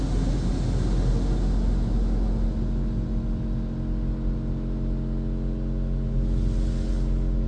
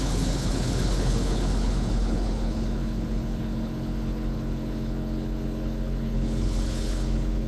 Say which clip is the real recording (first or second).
first